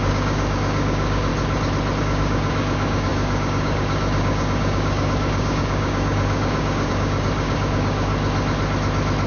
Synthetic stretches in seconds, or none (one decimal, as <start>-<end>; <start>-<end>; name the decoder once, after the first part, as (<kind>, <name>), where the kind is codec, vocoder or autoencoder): 0.0-1.3 (codec, DAC); 2.0-8.1